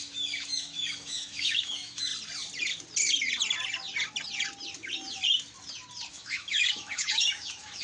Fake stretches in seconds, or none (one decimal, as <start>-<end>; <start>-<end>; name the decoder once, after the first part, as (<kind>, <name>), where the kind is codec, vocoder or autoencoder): 0.0-2.1 (autoencoder, DAC-VAE); 6.1-7.8